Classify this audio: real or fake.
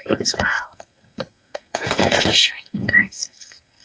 fake